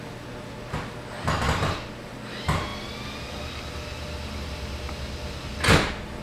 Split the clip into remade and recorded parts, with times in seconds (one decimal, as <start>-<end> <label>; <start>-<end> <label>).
0.0-6.2 recorded